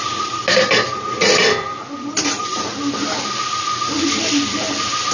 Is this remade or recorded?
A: recorded